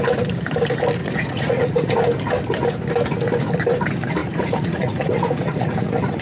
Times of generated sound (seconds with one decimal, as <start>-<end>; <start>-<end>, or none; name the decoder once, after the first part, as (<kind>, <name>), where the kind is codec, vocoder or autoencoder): 1.0-2.0 (vocoder, Vocos); 4.2-6.2